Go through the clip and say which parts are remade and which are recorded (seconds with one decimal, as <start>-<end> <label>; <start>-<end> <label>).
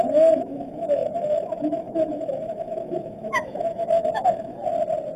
0.0-4.6 remade; 4.6-5.2 recorded